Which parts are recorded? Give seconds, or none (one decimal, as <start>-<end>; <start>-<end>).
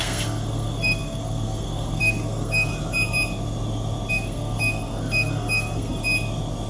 2.7-4.1; 6.0-6.7